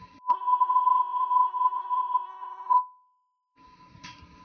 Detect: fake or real fake